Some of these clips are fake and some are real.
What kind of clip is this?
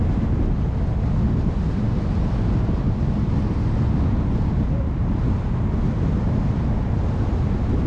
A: real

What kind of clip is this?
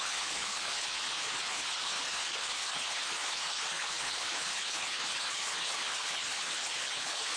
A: fake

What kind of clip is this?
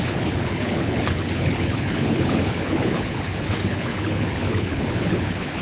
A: fake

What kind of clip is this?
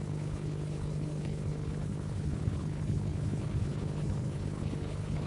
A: fake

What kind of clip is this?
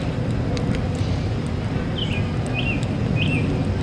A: real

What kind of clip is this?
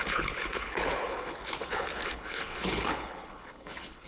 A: fake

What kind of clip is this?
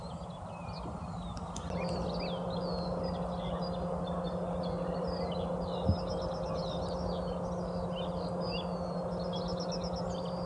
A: real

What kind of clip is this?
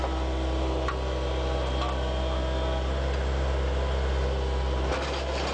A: real